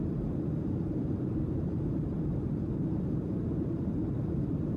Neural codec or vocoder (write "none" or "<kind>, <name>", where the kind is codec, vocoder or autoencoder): vocoder, BigVGAN v2